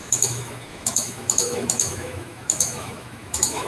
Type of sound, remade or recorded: remade